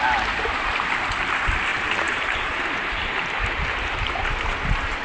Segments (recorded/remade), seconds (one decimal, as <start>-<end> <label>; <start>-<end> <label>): 0.0-1.7 recorded; 1.7-5.0 remade